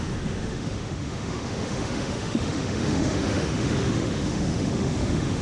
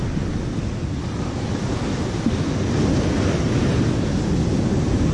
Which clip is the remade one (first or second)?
first